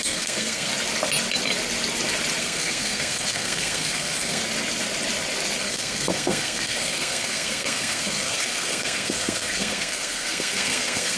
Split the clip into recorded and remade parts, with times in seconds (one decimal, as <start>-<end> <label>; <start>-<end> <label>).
0.0-0.7 remade; 0.7-2.4 recorded; 2.4-4.4 remade; 4.4-5.6 recorded; 5.6-11.2 remade